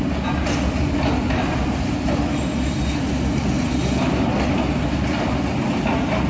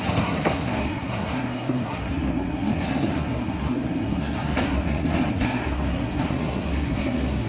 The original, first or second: first